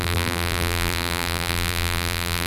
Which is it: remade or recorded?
remade